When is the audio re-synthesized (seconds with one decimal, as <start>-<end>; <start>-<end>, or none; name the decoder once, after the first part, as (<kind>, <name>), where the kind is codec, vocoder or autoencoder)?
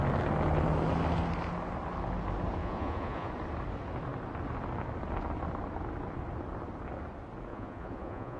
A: 2.6-3.3 (vocoder, Vocos); 7.5-8.4